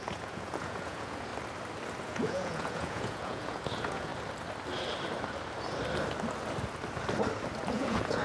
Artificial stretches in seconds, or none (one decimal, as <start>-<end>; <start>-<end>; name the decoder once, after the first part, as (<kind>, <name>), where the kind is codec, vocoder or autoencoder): 0.0-1.3 (vocoder, Vocos); 2.0-4.1; 7.7-8.2